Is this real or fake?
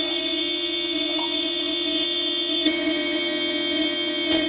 fake